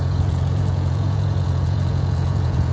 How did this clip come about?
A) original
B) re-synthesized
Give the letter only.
B